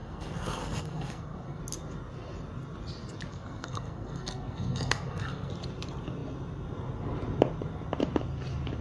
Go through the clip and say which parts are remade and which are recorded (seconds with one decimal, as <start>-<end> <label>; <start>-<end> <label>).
0.0-1.6 remade; 1.6-3.3 recorded; 3.3-5.5 remade; 5.5-8.8 recorded